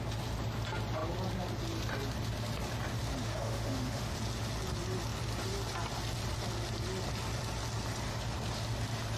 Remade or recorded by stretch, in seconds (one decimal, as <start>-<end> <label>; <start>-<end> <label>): 0.0-3.2 recorded; 3.2-4.1 remade; 4.1-9.2 recorded